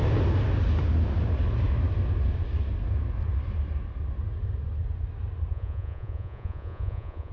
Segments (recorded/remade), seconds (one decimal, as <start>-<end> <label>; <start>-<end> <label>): 0.0-5.5 recorded; 5.5-7.3 remade